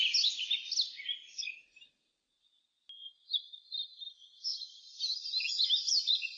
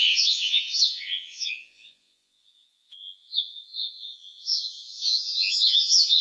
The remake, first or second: second